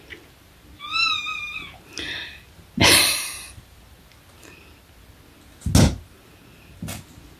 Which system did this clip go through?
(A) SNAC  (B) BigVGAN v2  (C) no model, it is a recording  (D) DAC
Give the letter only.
C